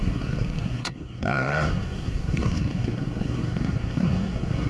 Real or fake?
fake